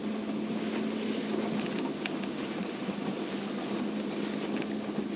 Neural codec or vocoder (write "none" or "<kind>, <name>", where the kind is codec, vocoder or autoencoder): none